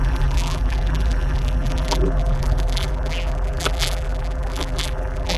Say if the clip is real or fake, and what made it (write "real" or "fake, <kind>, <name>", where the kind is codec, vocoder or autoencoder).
fake, vocoder, BigVGAN v2